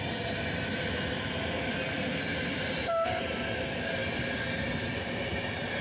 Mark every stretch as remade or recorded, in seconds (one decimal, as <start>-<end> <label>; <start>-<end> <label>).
0.0-5.8 recorded